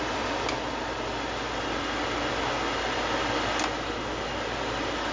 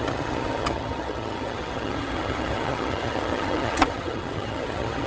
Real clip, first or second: first